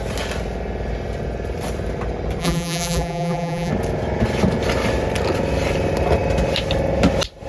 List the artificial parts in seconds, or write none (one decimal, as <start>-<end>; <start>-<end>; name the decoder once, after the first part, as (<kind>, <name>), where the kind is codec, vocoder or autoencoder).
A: 2.4-3.7 (vocoder, BigVGAN v2)